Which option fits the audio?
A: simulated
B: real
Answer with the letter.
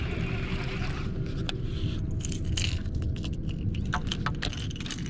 B